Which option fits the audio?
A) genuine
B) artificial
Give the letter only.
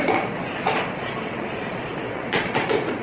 B